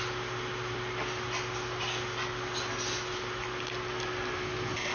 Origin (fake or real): real